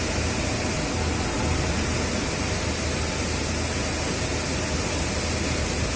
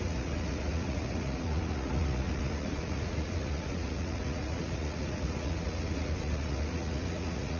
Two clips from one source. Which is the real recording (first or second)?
first